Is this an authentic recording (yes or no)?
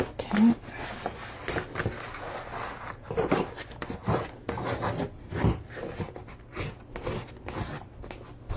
yes